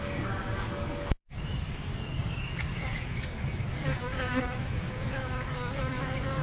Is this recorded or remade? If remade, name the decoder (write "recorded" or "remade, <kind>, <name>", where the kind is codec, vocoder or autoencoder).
remade, codec, DAC